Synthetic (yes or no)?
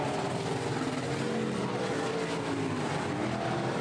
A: no